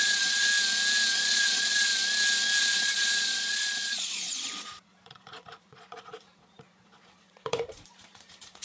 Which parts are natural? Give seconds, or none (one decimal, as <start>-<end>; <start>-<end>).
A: 0.5-1.1; 1.9-2.6